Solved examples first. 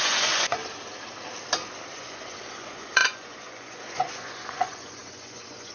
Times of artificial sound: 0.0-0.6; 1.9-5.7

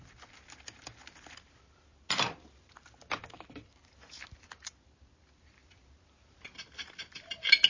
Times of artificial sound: none

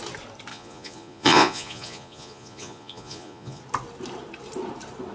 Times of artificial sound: 0.5-3.6

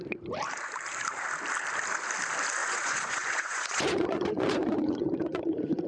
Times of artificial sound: 2.6-5.9

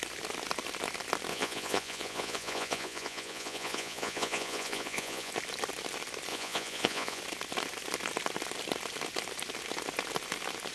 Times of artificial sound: 1.3-5.3; 6.3-7.2